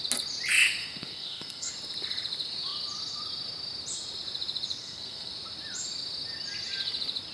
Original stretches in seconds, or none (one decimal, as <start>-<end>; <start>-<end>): 0.0-0.8; 1.7-4.8; 5.3-7.3

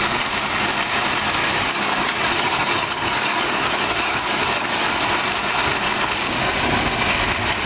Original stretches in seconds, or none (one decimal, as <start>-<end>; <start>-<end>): 0.0-1.4; 4.9-7.7

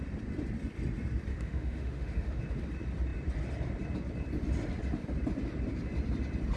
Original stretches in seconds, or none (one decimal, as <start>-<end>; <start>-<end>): 0.0-1.3; 2.4-6.6

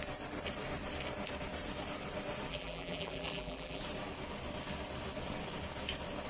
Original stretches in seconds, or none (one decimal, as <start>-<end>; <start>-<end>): 0.0-2.5; 3.8-6.3

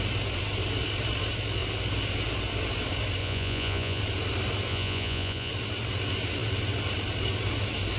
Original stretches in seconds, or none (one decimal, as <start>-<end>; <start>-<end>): 0.0-3.2; 4.0-4.7; 5.5-8.0

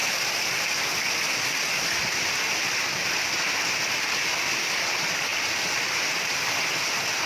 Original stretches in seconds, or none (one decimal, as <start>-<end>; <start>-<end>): 0.0-3.9; 5.3-6.0